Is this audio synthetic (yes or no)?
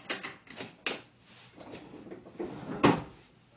no